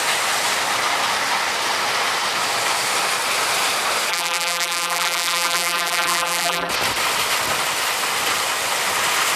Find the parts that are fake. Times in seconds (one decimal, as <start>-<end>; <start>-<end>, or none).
4.1-6.7